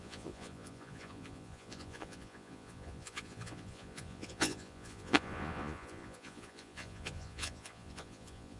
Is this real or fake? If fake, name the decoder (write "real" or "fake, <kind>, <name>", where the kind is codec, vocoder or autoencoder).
fake, vocoder, Vocos